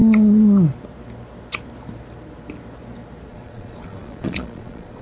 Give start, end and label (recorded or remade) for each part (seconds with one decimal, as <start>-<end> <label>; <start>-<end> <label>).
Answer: 0.0-3.3 recorded; 3.3-5.0 remade